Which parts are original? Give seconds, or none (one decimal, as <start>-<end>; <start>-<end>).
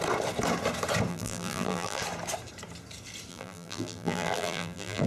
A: 0.0-1.1; 2.0-3.3